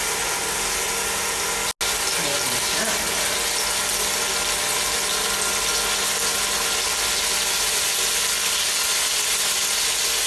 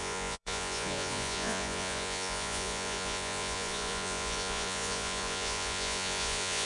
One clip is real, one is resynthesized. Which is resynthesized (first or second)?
second